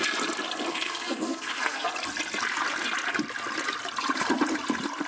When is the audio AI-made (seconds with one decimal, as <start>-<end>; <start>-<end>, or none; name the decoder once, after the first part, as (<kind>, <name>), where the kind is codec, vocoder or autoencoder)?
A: 0.7-1.9 (codec, SNAC)

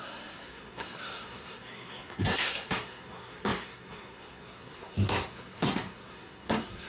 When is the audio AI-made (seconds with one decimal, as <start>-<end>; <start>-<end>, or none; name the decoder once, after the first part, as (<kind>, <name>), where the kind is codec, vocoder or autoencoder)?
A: 0.0-6.9 (codec, SNAC)

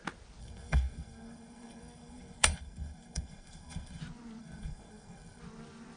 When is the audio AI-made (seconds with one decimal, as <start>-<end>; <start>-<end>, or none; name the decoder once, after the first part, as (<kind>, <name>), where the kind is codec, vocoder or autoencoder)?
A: 0.4-4.0 (codec, SNAC); 4.4-5.4

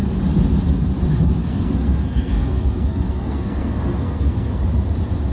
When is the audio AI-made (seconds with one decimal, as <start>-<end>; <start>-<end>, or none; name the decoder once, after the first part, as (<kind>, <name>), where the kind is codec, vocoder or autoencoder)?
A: 1.4-4.6 (codec, SNAC)

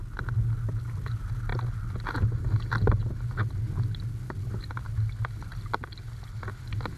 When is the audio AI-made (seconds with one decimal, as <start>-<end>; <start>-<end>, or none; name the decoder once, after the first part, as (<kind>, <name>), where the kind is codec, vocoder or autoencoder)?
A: none